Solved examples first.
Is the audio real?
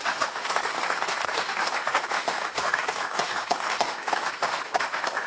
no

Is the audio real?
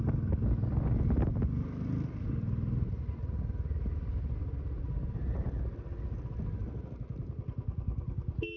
yes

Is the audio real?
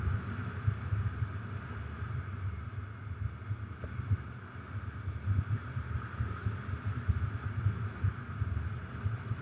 yes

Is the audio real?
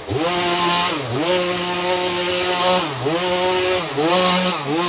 yes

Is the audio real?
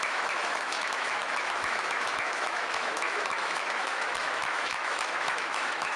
no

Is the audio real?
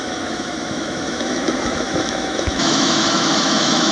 no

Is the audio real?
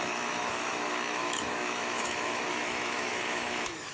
no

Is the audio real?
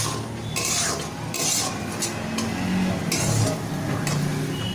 yes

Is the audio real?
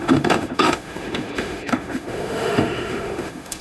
no